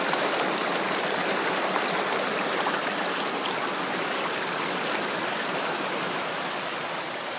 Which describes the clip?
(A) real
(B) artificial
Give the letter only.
A